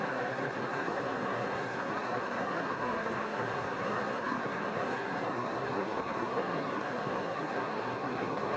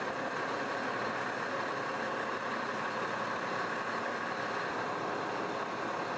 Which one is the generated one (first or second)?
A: first